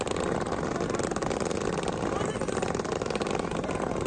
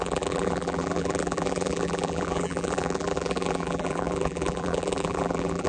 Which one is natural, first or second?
first